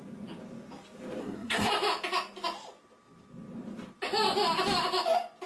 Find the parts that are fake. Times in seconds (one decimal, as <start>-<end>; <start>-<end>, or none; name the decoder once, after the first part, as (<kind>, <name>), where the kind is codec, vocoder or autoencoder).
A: 1.2-1.7 (codec, SNAC)